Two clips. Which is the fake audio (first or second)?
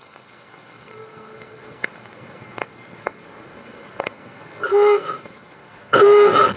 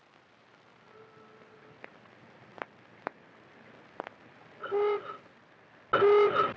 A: first